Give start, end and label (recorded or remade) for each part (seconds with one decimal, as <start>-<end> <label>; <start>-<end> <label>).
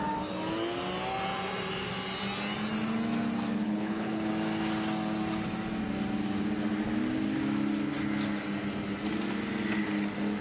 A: 0.0-3.6 recorded; 3.6-4.3 remade; 4.3-10.4 recorded